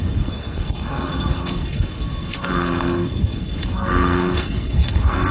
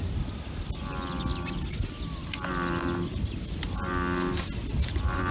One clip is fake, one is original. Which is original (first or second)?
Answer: second